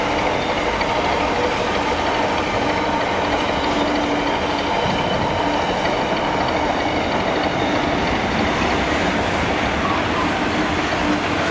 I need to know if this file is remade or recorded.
recorded